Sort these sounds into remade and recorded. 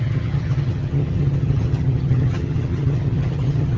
remade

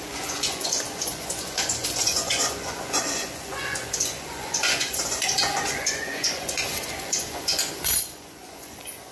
remade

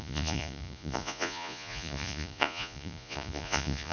remade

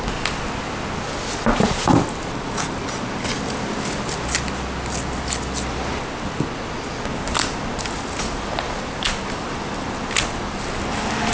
recorded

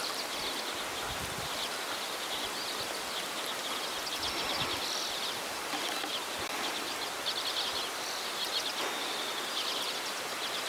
recorded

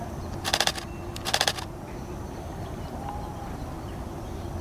recorded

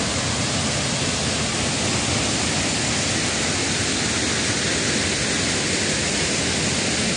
recorded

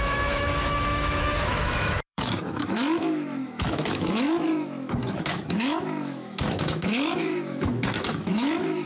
remade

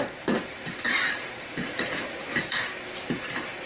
remade